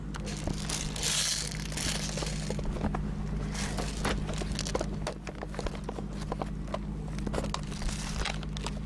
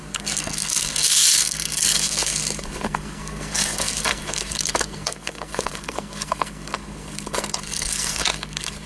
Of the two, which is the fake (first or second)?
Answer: second